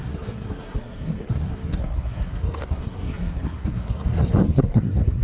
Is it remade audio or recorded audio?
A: remade